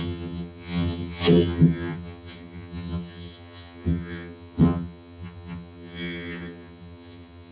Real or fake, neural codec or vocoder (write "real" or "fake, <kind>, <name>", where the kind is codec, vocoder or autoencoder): fake, vocoder, HiFi-GAN